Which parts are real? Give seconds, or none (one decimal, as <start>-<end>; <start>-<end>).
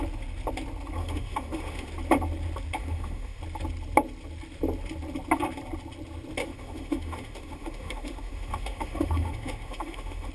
0.0-1.0; 1.9-2.8; 3.4-6.4